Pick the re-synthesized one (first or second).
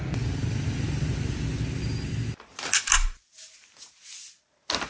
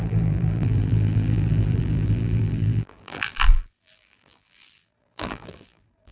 second